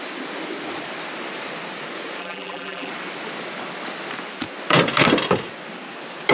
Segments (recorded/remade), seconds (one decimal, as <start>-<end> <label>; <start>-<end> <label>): 0.0-2.2 recorded; 2.2-2.9 remade; 2.9-6.3 recorded